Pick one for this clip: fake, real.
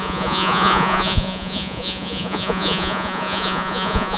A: fake